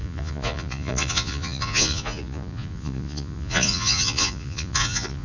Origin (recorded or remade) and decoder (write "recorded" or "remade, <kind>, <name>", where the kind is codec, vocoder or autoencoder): remade, vocoder, Vocos